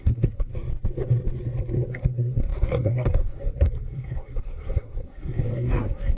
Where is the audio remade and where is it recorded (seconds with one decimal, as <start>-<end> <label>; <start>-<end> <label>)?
0.0-0.5 remade; 0.5-1.9 recorded; 1.9-6.2 remade